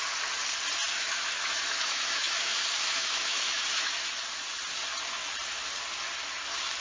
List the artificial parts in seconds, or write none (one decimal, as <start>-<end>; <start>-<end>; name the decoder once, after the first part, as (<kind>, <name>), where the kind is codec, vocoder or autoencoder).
0.9-4.1 (autoencoder, DAC-VAE)